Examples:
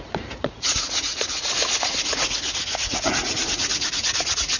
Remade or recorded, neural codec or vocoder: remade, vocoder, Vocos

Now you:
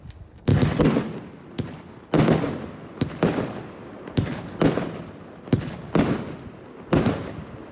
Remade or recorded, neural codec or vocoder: recorded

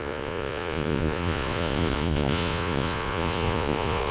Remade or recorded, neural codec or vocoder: remade, vocoder, Vocos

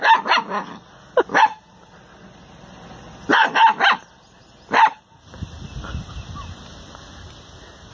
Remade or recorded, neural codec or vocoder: recorded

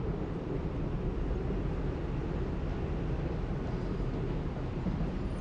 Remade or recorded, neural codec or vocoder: recorded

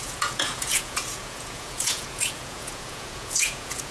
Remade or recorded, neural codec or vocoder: remade, vocoder, Vocos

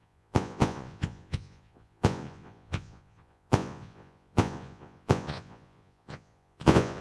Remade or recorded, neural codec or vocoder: remade, vocoder, Vocos